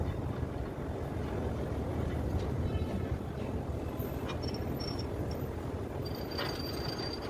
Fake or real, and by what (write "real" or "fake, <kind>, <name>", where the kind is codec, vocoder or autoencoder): real